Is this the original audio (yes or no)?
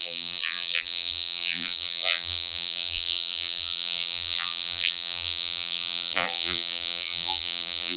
no